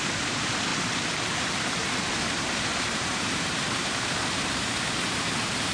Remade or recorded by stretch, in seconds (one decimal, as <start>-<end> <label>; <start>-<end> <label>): 0.0-0.7 remade; 0.7-1.7 recorded; 1.7-5.7 remade